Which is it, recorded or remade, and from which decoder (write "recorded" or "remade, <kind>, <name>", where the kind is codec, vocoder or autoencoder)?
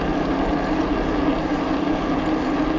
recorded